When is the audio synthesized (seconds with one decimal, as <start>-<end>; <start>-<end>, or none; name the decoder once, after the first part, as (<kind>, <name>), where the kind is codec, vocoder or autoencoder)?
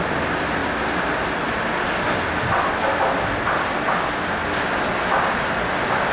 none